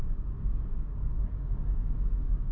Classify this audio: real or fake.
fake